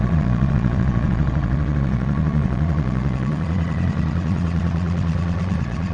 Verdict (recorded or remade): remade